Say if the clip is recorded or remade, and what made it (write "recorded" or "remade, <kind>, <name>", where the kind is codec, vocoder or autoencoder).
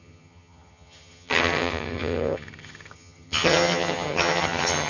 remade, vocoder, HiFi-GAN